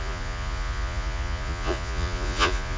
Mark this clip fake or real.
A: fake